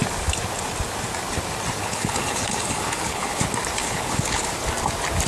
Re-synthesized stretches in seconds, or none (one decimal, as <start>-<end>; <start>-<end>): 1.8-3.4; 3.8-4.5